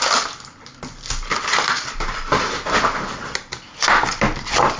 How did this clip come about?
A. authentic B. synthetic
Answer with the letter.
A